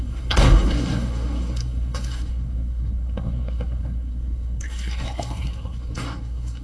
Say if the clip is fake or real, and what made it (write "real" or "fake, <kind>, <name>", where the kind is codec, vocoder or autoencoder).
fake, codec, SNAC